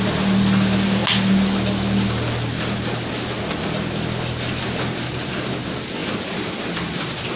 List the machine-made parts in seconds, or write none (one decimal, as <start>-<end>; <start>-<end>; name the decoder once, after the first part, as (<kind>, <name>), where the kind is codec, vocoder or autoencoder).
none